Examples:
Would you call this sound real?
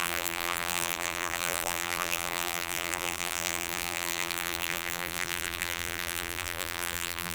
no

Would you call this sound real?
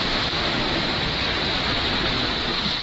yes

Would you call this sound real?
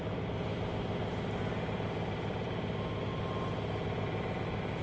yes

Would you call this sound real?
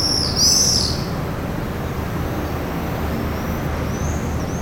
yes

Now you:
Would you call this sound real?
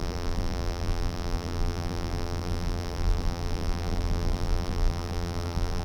no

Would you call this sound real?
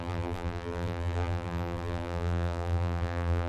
no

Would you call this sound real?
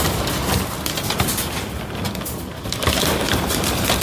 no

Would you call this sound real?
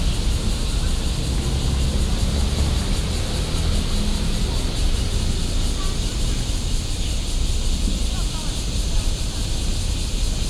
yes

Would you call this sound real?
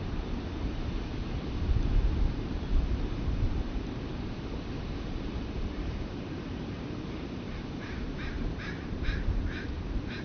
no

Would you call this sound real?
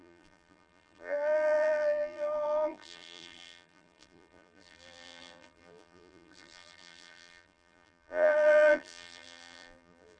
no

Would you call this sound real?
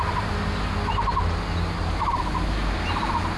yes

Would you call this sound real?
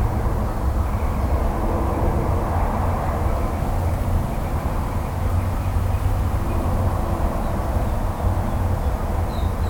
yes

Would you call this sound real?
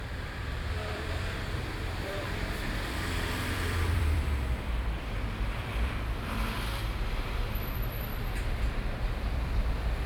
no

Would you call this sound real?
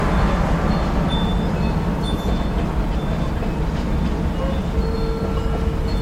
yes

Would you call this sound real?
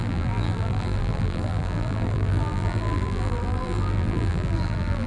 no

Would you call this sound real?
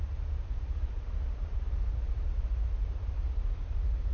no